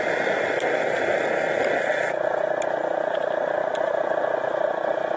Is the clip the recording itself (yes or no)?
yes